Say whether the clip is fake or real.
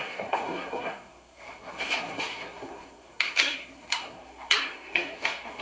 fake